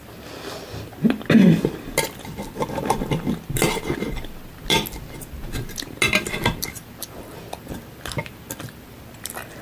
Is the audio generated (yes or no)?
no